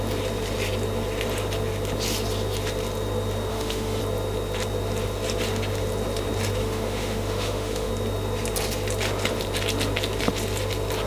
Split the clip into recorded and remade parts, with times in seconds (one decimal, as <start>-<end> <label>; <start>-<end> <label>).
0.0-3.5 recorded; 3.5-4.0 remade; 4.0-6.6 recorded; 6.6-7.9 remade; 7.9-11.1 recorded